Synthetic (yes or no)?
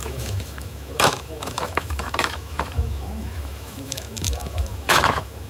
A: yes